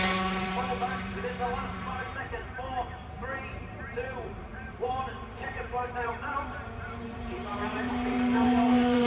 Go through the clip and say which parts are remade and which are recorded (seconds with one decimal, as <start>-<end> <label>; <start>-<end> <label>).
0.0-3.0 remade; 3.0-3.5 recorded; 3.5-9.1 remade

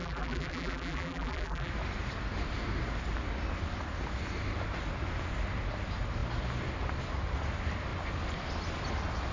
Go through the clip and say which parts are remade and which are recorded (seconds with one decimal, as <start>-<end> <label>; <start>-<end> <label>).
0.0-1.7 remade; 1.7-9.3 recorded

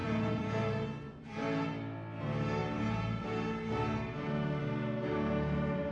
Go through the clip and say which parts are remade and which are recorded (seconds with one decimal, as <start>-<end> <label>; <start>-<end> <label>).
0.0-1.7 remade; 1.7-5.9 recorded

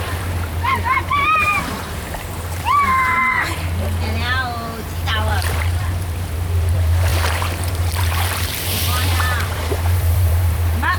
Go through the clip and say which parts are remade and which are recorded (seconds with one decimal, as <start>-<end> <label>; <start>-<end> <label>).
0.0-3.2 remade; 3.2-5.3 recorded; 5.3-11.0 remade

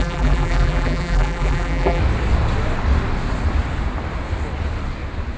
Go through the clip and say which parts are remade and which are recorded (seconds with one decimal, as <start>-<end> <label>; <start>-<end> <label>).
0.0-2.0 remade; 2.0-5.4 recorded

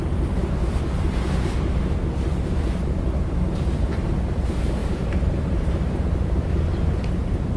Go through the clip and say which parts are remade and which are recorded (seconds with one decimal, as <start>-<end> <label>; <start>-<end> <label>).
0.0-7.6 recorded

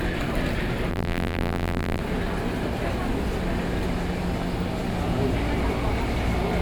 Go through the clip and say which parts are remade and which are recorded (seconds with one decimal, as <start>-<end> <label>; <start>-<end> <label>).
0.0-0.9 recorded; 0.9-2.0 remade; 2.0-6.6 recorded